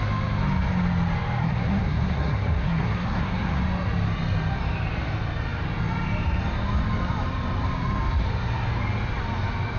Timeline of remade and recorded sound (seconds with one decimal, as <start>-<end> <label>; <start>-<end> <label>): 0.0-1.4 recorded; 1.4-3.6 remade; 3.6-9.8 recorded